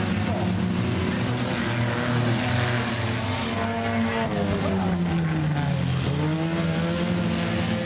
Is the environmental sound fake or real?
real